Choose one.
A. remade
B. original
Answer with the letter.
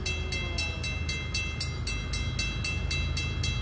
B